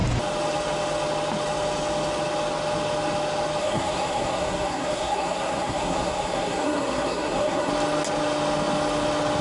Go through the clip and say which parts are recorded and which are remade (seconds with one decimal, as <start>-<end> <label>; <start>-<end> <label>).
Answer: 0.0-3.6 recorded; 3.6-7.7 remade; 7.7-9.4 recorded